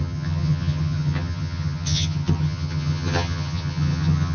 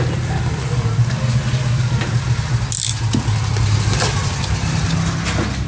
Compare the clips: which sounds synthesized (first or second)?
first